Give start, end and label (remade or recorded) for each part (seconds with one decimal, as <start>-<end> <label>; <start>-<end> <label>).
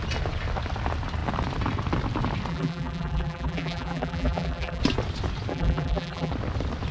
0.0-2.5 recorded; 2.5-4.8 remade; 4.8-5.5 recorded; 5.5-6.3 remade; 6.3-6.9 recorded